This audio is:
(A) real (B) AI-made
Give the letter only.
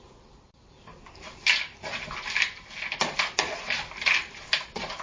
A